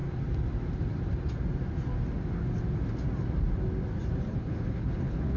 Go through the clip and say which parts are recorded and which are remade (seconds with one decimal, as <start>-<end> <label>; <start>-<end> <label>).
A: 0.0-4.3 recorded; 4.3-5.4 remade